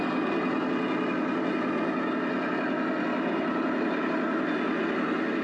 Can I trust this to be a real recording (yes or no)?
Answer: yes